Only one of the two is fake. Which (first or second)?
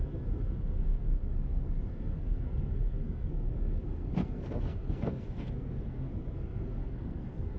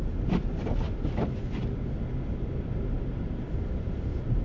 first